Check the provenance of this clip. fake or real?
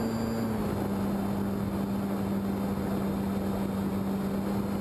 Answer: real